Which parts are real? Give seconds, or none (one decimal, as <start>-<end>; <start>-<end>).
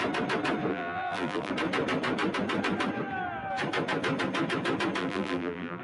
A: 0.0-0.7; 1.5-5.0